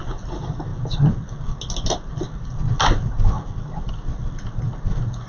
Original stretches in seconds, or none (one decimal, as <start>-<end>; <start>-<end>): 0.0-5.3